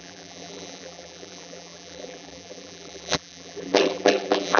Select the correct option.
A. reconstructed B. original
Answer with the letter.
A